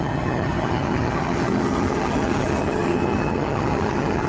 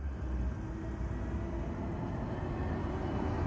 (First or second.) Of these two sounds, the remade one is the first